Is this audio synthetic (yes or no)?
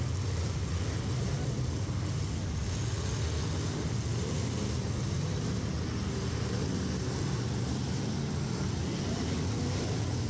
no